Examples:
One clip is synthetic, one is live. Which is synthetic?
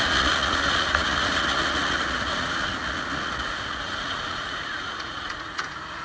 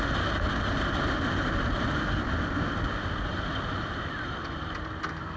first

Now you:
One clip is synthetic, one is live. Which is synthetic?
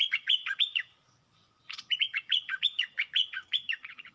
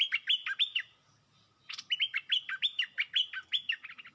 first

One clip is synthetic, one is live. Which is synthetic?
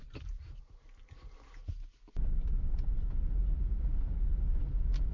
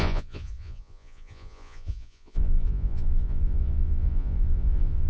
second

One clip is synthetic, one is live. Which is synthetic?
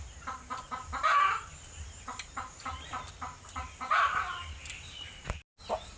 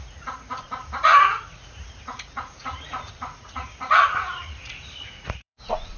second